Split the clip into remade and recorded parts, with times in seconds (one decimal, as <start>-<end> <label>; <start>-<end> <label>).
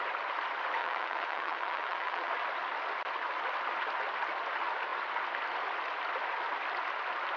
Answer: 0.0-0.8 recorded; 0.8-2.3 remade; 2.3-7.4 recorded